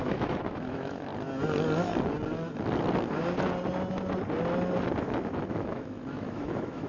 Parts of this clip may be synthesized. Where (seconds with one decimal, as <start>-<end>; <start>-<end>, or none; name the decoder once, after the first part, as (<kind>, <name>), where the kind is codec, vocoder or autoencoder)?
0.0-1.1 (autoencoder, DAC-VAE); 5.0-6.9